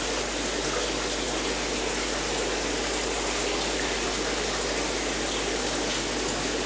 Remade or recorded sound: recorded